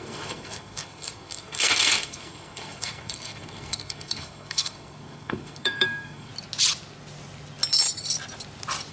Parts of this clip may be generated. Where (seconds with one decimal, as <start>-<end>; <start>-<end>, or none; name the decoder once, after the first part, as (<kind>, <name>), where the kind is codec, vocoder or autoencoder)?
0.0-6.3 (codec, SNAC)